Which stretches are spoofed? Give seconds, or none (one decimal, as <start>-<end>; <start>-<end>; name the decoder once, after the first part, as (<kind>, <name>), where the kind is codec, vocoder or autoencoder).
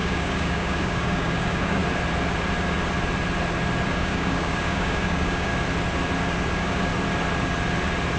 0.0-1.8 (codec, DAC); 3.9-5.5; 6.5-6.9